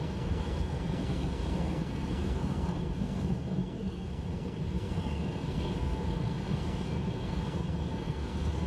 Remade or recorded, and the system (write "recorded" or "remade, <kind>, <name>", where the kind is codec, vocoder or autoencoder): remade, codec, SNAC